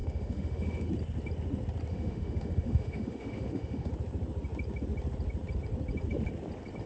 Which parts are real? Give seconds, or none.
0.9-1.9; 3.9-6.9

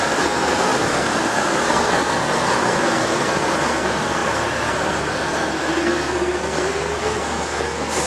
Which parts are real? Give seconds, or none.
none

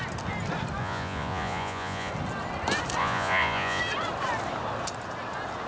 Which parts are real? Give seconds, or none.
0.0-0.8; 2.1-3.0; 3.8-5.7

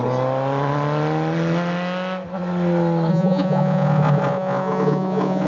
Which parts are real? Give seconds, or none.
0.0-3.1

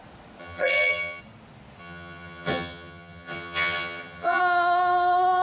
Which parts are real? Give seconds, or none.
0.0-0.4; 1.2-1.8; 4.4-5.4

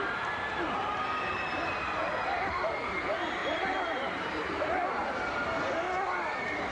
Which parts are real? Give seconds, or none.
0.0-0.8; 3.0-3.4; 5.6-6.7

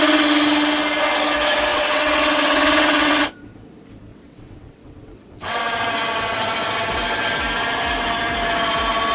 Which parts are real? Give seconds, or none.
0.0-1.7; 3.2-4.1; 5.6-9.1